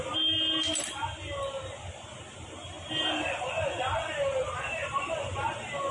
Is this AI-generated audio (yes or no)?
no